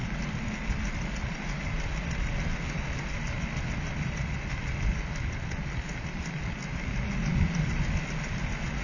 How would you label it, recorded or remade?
recorded